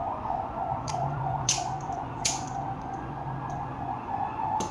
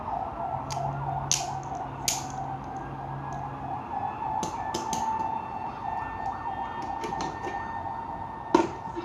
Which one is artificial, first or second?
first